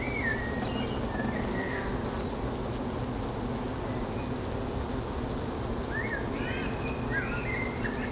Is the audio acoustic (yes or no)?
yes